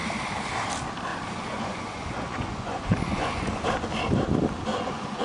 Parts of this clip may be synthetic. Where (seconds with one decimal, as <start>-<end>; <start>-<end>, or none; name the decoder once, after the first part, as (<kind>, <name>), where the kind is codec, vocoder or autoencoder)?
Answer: 1.1-3.6 (vocoder, Vocos); 4.7-5.2